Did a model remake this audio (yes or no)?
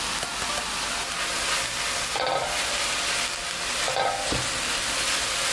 no